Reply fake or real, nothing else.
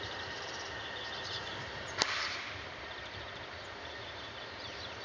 fake